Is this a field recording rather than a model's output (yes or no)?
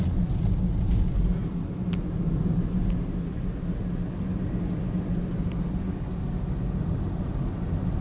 yes